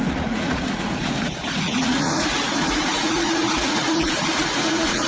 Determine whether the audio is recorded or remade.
remade